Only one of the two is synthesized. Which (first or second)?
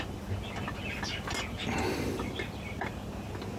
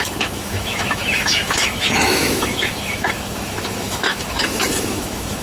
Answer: second